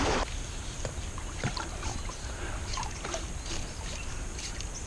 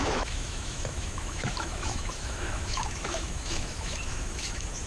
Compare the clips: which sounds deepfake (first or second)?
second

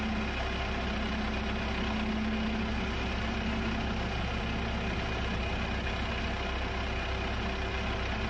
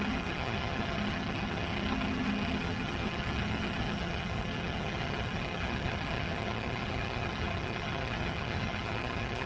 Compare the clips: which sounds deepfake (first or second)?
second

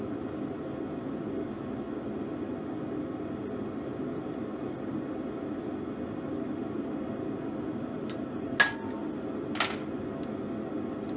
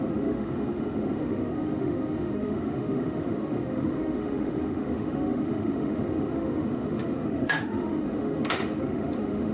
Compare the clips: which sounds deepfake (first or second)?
second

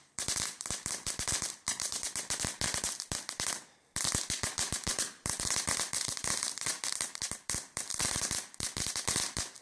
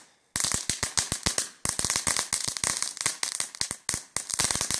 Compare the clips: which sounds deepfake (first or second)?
first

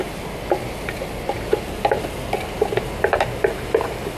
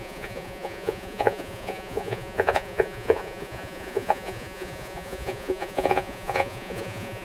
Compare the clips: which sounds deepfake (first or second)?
second